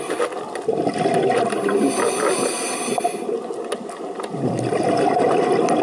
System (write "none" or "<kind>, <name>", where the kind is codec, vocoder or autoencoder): none